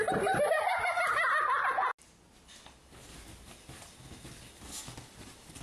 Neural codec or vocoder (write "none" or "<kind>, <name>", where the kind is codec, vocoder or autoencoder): none